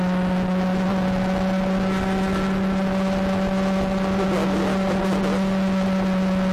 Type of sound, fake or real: real